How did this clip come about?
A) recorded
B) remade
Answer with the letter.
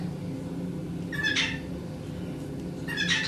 A